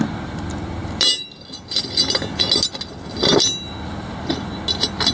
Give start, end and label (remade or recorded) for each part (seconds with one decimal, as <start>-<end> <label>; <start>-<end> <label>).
0.0-5.1 recorded